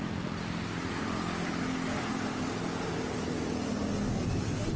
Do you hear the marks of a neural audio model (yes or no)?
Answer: no